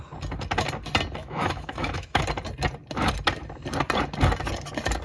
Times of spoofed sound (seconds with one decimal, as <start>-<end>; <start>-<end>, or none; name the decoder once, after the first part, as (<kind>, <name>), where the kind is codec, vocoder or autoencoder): 1.2-2.2 (autoencoder, DAC-VAE)